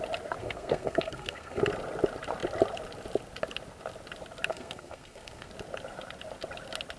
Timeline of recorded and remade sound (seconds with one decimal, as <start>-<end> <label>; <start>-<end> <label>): 0.0-0.4 recorded; 0.4-1.6 remade; 1.6-4.5 recorded; 4.5-5.5 remade; 5.5-7.0 recorded